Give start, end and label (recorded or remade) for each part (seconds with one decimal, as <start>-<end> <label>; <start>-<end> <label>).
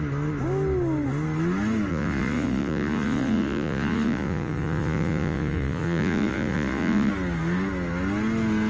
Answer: 0.0-1.9 recorded; 1.9-7.1 remade; 7.1-8.7 recorded